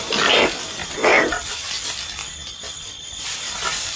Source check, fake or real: real